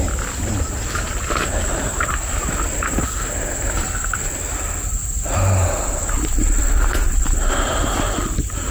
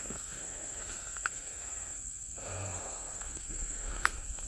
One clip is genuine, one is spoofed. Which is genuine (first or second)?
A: first